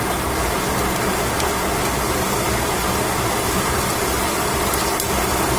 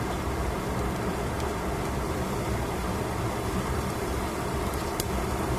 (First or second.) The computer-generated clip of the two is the second